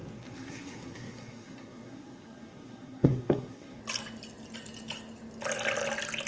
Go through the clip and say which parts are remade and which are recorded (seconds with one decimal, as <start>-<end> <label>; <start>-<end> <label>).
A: 0.0-3.8 remade; 3.8-6.3 recorded